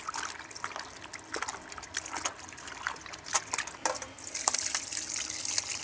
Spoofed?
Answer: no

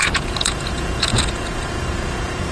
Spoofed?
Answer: yes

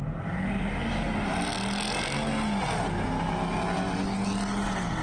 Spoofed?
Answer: no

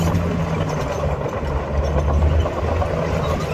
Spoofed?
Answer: no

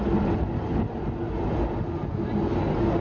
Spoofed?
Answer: no